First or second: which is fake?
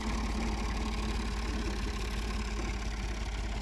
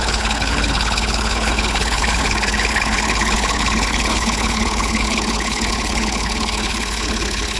second